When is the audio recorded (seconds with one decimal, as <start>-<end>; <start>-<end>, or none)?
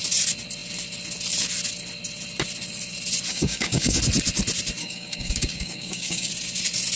0.0-3.3; 4.0-4.8; 6.3-7.0